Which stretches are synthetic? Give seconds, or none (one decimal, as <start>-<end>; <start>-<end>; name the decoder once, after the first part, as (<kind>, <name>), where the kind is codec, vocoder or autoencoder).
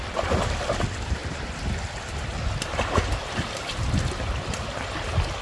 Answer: none